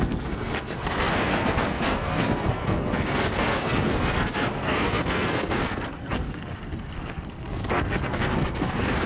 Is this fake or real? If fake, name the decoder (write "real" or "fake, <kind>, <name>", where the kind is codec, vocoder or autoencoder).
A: fake, codec, SNAC